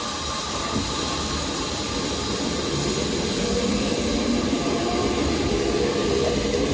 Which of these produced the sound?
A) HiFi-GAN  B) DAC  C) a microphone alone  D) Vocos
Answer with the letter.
C